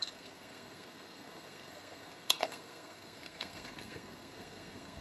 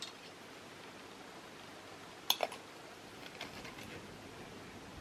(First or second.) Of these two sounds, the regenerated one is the first